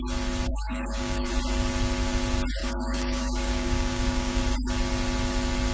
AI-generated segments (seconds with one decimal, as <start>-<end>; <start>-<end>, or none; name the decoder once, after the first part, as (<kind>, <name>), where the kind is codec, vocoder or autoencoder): 0.5-1.3 (codec, DAC); 2.6-4.4